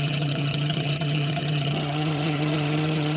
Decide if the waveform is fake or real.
fake